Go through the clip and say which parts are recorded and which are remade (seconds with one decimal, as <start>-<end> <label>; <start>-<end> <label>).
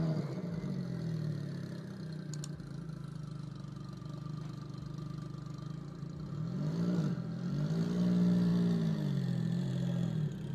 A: 0.0-10.5 recorded